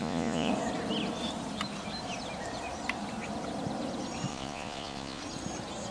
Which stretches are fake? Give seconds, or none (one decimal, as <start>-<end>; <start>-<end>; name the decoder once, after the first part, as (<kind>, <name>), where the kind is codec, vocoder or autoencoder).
0.0-0.5 (vocoder, Vocos); 4.3-5.2